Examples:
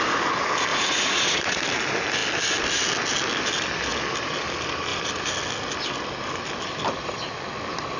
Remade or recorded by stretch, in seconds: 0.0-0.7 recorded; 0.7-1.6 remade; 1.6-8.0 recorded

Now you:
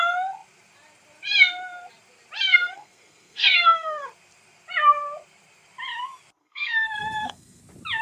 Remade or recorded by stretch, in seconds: 0.0-2.5 recorded; 2.5-4.1 remade; 4.1-6.4 recorded; 6.4-7.6 remade; 7.6-8.0 recorded